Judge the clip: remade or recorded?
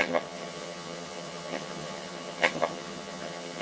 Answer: remade